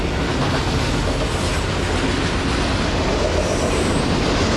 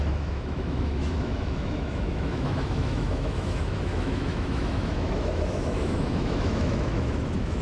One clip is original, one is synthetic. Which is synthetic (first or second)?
second